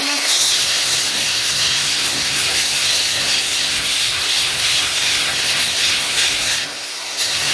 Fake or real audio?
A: fake